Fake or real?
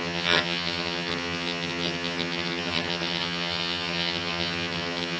fake